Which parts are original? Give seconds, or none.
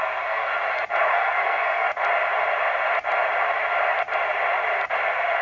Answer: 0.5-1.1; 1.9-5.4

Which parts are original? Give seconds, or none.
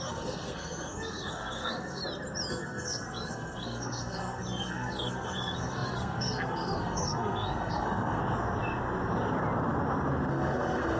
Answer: 2.0-2.5; 8.2-10.3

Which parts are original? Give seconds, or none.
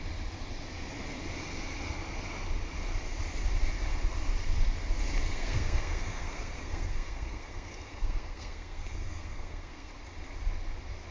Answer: 0.0-5.3; 9.9-11.1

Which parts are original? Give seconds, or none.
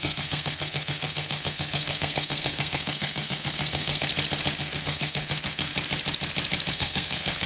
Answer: 4.1-4.6; 5.7-6.7